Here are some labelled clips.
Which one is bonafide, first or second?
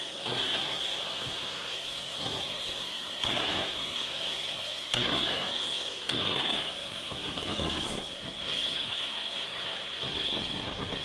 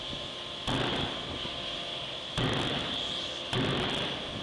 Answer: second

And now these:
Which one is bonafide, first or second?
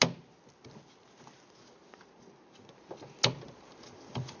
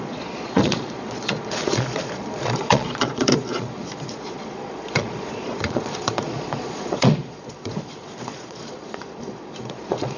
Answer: first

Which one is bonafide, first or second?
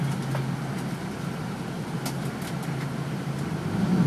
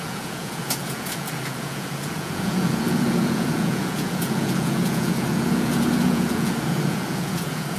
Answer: first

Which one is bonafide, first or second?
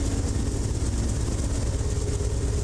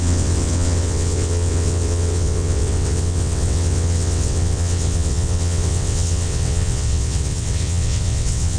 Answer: first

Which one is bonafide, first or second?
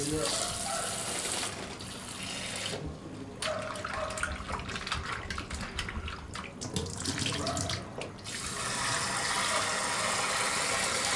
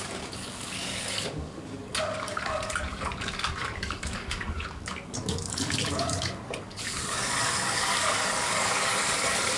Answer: first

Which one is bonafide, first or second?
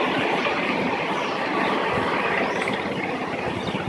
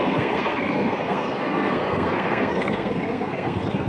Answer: first